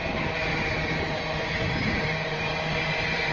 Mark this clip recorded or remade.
recorded